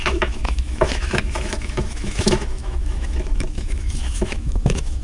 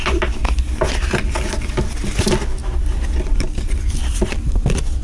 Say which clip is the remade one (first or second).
first